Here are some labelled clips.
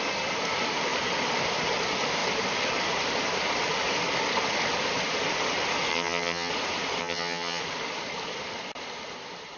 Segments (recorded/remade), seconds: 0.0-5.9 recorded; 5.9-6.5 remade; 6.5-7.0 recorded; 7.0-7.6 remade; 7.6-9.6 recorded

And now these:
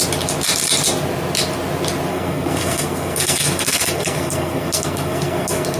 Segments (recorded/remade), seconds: 0.0-2.1 recorded; 2.1-5.8 remade

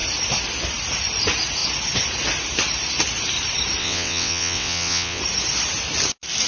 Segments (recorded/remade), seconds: 0.0-3.8 recorded; 3.8-5.2 remade; 5.2-6.5 recorded

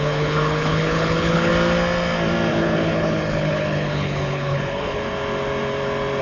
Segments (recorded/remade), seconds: 0.0-1.5 remade; 1.5-2.5 recorded; 2.5-5.0 remade; 5.0-6.2 recorded

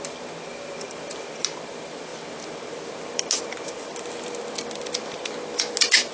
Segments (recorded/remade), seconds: 0.0-6.1 recorded

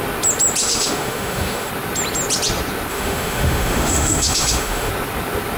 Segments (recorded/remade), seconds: 0.0-0.6 recorded; 0.6-1.7 remade; 1.7-2.9 recorded; 2.9-4.9 remade; 4.9-5.6 recorded

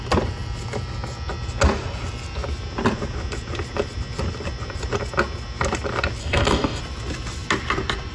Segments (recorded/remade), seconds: 0.0-6.2 recorded; 6.2-6.8 remade; 6.8-8.1 recorded

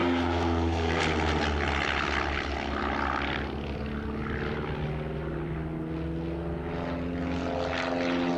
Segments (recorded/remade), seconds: 0.0-1.0 remade; 1.0-8.4 recorded